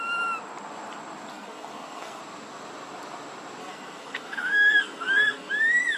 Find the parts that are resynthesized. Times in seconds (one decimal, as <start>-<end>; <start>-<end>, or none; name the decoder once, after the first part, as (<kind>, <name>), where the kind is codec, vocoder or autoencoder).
1.3-2.2 (codec, SNAC); 3.6-5.5